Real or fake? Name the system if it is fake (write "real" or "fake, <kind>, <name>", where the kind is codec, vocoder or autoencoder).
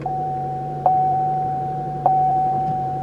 fake, vocoder, BigVGAN v2